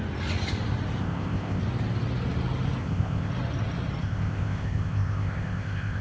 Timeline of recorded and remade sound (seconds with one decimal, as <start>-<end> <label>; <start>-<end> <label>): 0.0-1.0 recorded; 1.0-1.6 remade; 1.6-2.8 recorded; 2.8-3.3 remade; 3.3-4.0 recorded; 4.0-6.0 remade